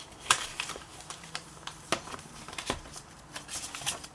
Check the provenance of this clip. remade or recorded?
remade